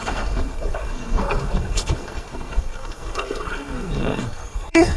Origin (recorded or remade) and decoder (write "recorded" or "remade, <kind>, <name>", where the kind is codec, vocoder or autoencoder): remade, codec, SNAC